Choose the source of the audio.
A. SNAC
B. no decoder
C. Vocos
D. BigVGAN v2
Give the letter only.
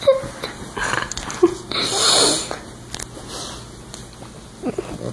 B